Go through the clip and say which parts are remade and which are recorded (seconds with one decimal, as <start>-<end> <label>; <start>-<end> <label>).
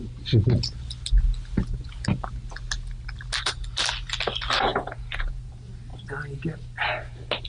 0.0-4.7 recorded; 4.7-5.5 remade; 5.5-7.5 recorded